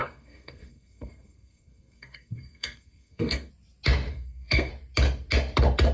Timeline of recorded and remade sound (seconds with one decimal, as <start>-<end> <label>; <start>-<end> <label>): 0.0-3.5 remade; 3.5-4.1 recorded; 4.1-4.7 remade; 4.7-5.9 recorded